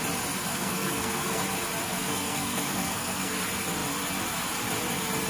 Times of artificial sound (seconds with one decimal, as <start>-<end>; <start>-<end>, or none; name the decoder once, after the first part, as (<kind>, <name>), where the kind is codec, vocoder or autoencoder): 0.5-1.4 (codec, SNAC); 1.8-3.4